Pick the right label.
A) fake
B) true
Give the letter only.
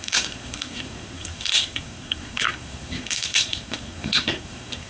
A